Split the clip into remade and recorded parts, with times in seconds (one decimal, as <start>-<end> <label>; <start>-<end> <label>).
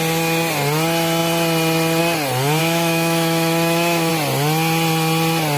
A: 0.0-2.6 recorded; 2.6-4.1 remade; 4.1-5.6 recorded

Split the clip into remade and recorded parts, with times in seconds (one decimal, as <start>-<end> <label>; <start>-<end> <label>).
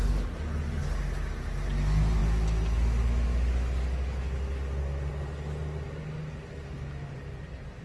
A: 0.0-7.8 recorded